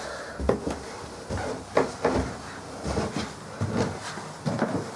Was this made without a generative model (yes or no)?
yes